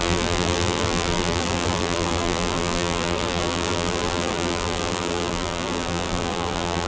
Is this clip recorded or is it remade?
remade